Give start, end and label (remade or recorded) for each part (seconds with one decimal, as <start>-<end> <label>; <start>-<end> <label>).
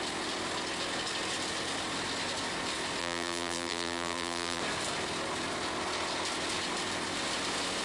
0.0-3.0 recorded; 3.0-4.6 remade; 4.6-7.8 recorded